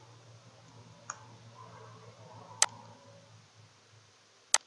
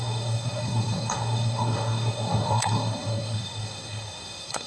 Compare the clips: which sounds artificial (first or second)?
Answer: second